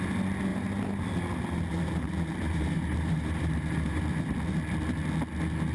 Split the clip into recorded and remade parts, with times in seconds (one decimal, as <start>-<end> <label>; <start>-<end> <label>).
0.0-0.5 recorded; 0.5-1.0 remade; 1.0-1.7 recorded; 1.7-4.0 remade; 4.0-5.7 recorded